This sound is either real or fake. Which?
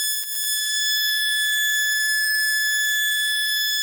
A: fake